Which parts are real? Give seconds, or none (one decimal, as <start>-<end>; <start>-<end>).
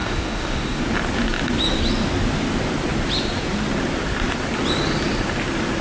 0.8-5.8